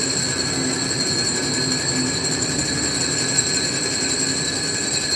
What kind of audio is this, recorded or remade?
recorded